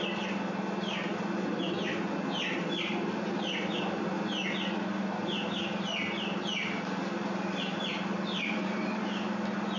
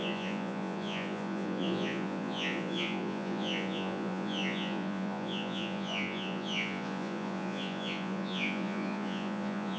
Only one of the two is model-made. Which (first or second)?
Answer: second